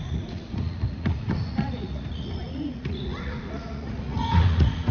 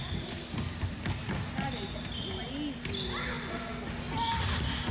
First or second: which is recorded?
second